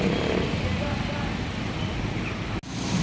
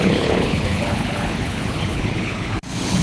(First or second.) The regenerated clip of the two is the second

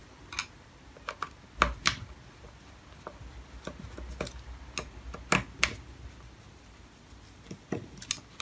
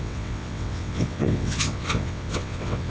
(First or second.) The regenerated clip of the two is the second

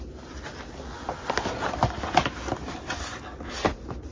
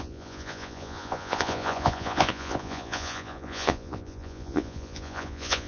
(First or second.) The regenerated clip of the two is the second